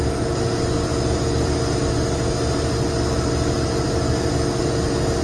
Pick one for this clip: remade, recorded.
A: recorded